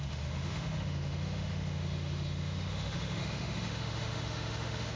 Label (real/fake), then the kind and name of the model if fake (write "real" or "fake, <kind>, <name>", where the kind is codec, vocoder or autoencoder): fake, autoencoder, DAC-VAE